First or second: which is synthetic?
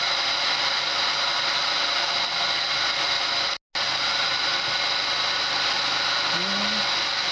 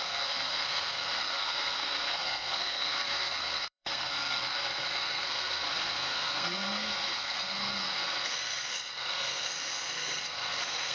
second